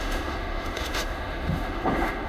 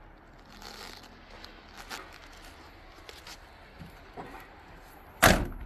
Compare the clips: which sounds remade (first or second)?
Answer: first